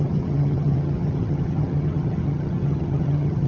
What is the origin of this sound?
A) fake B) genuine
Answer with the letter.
A